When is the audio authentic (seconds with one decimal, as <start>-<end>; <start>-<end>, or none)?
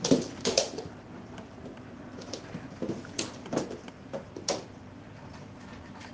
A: 2.1-3.9